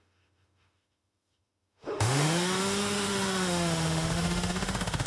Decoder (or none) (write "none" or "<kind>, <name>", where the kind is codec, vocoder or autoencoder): autoencoder, DAC-VAE